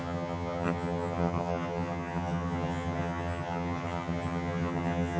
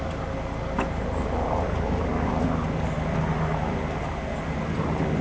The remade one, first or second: first